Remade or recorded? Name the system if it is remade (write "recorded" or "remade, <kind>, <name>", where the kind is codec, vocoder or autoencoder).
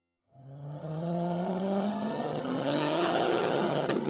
remade, vocoder, HiFi-GAN